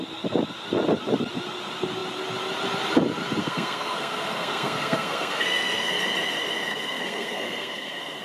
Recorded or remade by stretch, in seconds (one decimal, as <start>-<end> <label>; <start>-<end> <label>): 0.0-3.4 recorded; 3.4-5.9 remade; 5.9-6.7 recorded; 6.7-8.2 remade